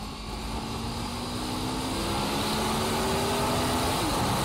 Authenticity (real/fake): real